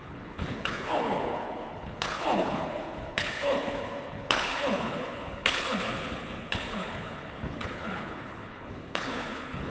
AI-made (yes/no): yes